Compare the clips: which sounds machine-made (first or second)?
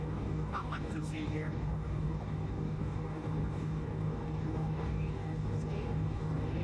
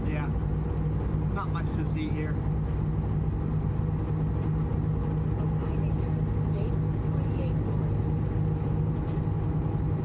first